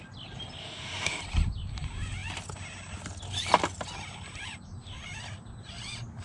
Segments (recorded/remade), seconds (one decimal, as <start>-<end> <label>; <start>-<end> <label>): 0.0-0.6 recorded; 0.6-1.2 remade; 1.2-6.2 recorded